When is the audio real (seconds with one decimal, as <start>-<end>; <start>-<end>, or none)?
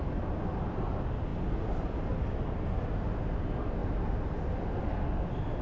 0.0-5.6